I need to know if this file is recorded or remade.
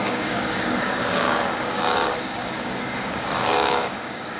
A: remade